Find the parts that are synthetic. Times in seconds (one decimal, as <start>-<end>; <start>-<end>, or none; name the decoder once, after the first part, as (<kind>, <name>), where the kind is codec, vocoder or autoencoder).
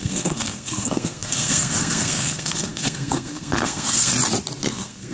0.0-4.1 (codec, SNAC); 4.6-5.1